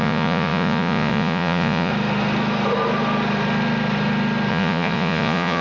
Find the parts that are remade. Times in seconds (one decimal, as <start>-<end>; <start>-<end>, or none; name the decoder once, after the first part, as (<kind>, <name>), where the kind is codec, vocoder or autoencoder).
0.0-1.9 (vocoder, Vocos); 4.5-5.6